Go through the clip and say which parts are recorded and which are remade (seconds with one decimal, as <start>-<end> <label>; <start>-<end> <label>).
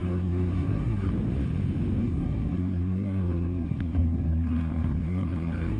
0.0-1.1 remade; 1.1-2.0 recorded; 2.0-5.8 remade